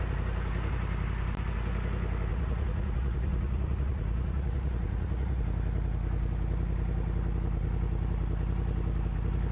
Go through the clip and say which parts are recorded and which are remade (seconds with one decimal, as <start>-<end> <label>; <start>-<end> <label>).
0.0-2.3 recorded; 2.3-5.4 remade; 5.4-9.5 recorded

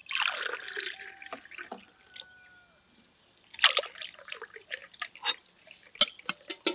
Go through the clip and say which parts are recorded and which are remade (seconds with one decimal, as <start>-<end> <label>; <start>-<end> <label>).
0.0-6.7 recorded

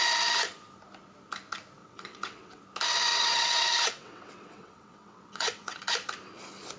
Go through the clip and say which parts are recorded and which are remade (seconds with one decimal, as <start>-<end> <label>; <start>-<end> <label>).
0.0-1.8 recorded; 1.8-2.6 remade; 2.6-3.1 recorded; 3.1-5.8 remade; 5.8-6.8 recorded

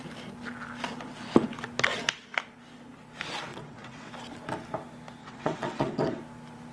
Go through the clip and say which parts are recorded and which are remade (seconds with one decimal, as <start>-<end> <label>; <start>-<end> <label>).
0.0-3.5 recorded; 3.5-4.1 remade; 4.1-5.2 recorded; 5.2-6.2 remade; 6.2-6.7 recorded

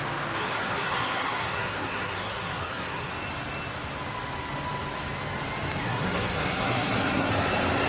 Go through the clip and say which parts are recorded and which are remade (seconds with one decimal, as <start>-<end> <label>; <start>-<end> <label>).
0.0-0.4 recorded; 0.4-3.1 remade; 3.1-5.8 recorded; 5.8-7.3 remade; 7.3-7.9 recorded

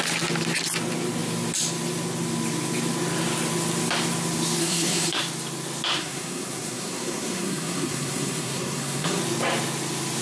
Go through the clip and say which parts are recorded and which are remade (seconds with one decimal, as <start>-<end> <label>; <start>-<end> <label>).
0.0-4.6 recorded; 4.6-5.2 remade; 5.2-6.0 recorded; 6.0-9.2 remade; 9.2-10.2 recorded

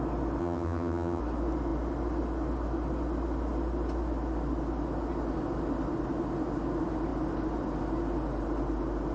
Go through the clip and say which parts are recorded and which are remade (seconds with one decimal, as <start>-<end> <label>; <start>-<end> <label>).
0.0-0.4 recorded; 0.4-1.2 remade; 1.2-9.1 recorded

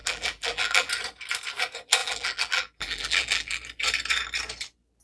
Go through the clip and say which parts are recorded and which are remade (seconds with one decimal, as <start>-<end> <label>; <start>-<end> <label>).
0.0-0.9 remade; 0.9-2.0 recorded; 2.0-3.6 remade; 3.6-5.0 recorded